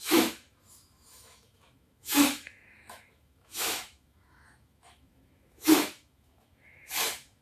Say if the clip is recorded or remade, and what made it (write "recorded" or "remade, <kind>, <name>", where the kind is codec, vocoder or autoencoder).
remade, autoencoder, DAC-VAE